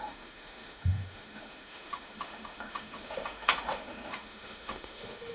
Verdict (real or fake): fake